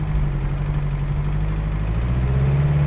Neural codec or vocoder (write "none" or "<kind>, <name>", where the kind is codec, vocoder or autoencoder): none